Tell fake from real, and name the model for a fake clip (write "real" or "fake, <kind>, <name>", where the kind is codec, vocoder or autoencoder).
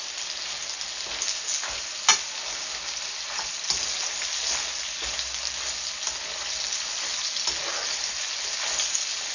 real